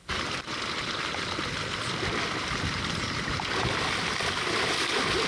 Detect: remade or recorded remade